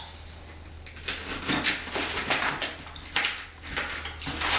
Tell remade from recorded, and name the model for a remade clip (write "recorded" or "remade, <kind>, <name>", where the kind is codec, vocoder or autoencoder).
recorded